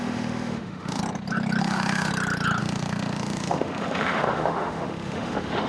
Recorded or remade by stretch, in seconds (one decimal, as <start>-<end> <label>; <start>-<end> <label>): 0.0-1.0 remade; 1.0-1.6 recorded; 1.6-2.1 remade; 2.1-2.6 recorded; 2.6-5.7 remade